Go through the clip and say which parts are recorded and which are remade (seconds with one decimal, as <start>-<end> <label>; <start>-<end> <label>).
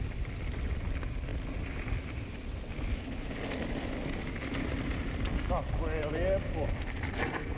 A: 0.0-7.6 recorded